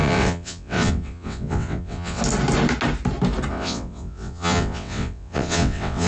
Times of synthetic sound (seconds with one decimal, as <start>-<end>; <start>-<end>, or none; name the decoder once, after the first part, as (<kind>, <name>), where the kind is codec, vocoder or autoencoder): 0.0-2.2 (vocoder, WaveNeXt); 3.5-6.1